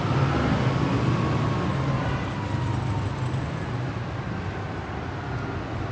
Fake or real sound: real